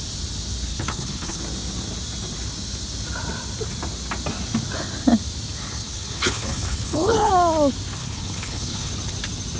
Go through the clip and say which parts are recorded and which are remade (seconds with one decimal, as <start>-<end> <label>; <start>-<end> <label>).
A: 0.0-0.7 recorded; 0.7-1.4 remade; 1.4-5.6 recorded; 5.6-7.3 remade; 7.3-8.0 recorded; 8.0-8.9 remade; 8.9-9.6 recorded

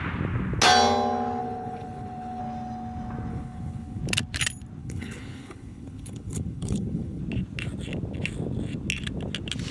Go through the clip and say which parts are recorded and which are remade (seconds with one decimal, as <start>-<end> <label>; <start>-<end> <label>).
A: 0.0-1.4 recorded; 1.4-2.4 remade; 2.4-3.3 recorded; 3.3-4.0 remade; 4.0-4.8 recorded; 4.8-7.2 remade; 7.2-9.7 recorded

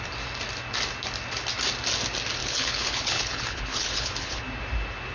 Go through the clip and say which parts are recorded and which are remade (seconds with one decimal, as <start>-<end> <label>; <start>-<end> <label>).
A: 0.0-2.4 recorded; 2.4-4.4 remade; 4.4-5.1 recorded

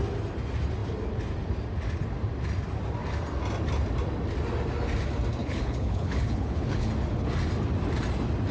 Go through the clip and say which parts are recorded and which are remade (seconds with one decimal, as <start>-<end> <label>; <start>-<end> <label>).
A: 0.0-5.4 recorded; 5.4-6.9 remade; 6.9-8.5 recorded

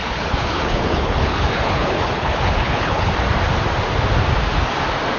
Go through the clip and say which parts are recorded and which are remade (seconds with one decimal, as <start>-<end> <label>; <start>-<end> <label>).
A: 0.0-3.1 remade; 3.1-5.2 recorded

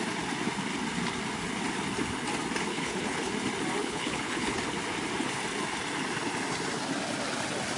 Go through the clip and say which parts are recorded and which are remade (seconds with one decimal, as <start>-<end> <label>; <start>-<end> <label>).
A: 0.0-2.7 recorded; 2.7-3.3 remade; 3.3-3.8 recorded; 3.8-4.6 remade; 4.6-7.8 recorded